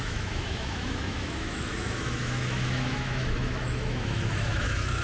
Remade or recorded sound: remade